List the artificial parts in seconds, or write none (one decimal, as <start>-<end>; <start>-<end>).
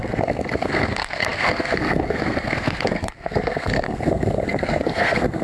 0.0-5.4